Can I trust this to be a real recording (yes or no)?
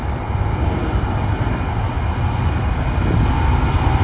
yes